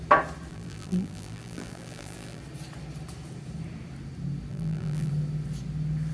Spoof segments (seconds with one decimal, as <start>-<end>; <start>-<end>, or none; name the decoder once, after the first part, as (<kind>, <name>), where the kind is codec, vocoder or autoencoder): 0.5-2.4 (vocoder, BigVGAN v2); 4.5-5.1